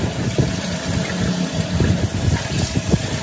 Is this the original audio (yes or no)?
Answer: yes